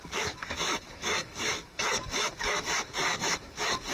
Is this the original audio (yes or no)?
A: no